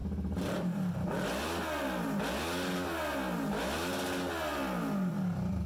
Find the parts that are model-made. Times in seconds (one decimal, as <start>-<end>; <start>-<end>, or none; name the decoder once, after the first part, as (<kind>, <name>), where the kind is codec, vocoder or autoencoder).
none